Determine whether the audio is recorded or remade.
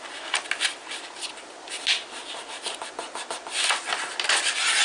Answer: recorded